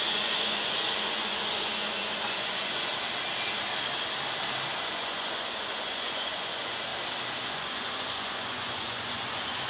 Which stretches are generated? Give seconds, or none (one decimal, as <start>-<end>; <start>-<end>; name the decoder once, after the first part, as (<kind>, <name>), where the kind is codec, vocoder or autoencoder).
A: 0.0-2.9 (vocoder, Vocos); 4.8-6.9; 7.4-9.7